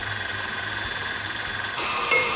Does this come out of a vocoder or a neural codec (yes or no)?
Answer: yes